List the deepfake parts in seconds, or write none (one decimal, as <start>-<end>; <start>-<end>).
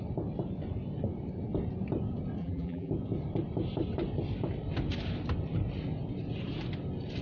2.4-2.9